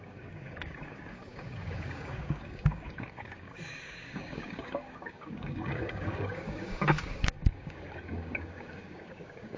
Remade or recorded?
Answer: remade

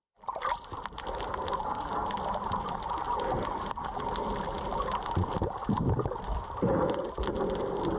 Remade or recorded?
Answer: recorded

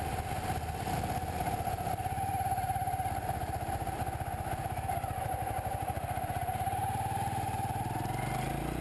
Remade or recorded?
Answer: recorded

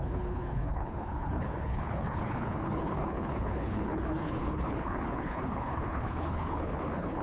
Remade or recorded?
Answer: remade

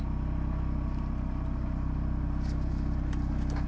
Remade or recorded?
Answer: recorded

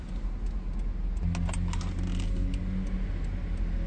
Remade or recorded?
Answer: recorded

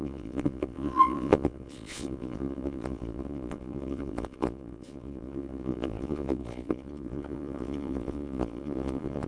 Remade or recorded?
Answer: remade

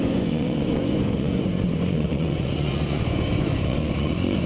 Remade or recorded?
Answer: remade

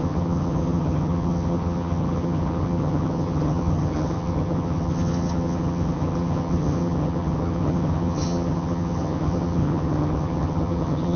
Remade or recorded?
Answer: remade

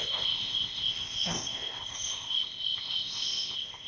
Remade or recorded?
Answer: remade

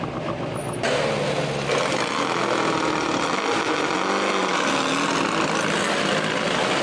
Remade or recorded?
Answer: recorded